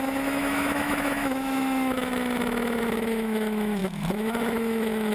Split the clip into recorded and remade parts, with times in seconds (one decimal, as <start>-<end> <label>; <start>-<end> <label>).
0.0-5.1 remade